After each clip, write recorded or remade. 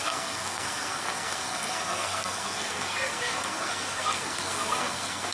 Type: remade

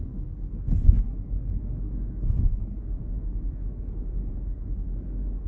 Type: remade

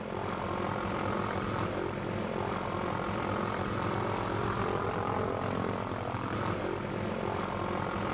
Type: remade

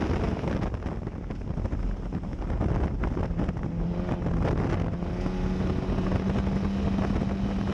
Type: recorded